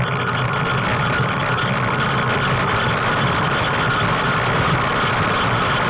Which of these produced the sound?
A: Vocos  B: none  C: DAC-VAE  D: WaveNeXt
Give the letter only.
B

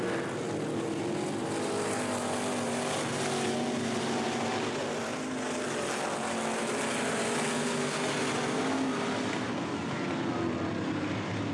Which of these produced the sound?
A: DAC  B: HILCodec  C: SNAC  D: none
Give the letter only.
D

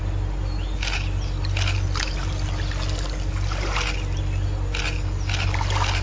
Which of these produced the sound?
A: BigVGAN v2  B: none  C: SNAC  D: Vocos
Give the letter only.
B